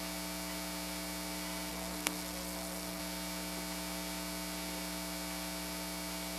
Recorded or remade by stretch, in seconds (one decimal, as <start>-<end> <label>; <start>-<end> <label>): 0.0-1.7 recorded; 1.7-3.0 remade; 3.0-6.4 recorded